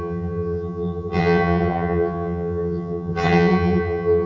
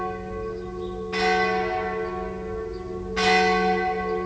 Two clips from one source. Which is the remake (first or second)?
first